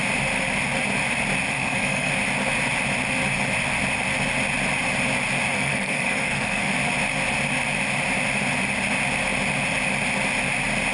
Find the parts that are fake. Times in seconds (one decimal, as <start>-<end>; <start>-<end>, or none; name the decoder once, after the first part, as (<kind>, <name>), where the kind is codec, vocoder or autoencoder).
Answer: 1.5-2.1 (codec, SNAC); 5.5-6.7